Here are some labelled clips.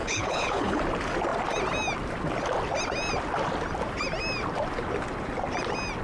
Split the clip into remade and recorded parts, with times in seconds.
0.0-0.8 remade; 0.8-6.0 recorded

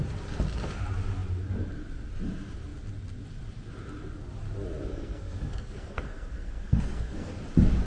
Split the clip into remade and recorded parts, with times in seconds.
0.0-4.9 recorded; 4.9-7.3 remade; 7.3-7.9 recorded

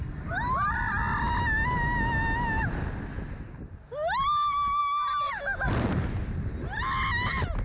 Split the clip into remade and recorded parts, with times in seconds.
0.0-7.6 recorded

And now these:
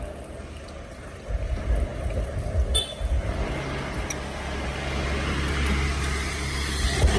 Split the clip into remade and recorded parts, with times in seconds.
0.0-7.2 recorded

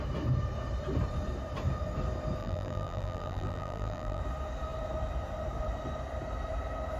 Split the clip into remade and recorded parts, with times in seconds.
0.0-2.4 recorded; 2.4-4.2 remade; 4.2-7.0 recorded

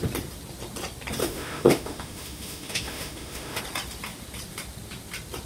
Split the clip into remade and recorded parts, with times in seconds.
0.0-1.2 recorded; 1.2-3.6 remade; 3.6-5.5 recorded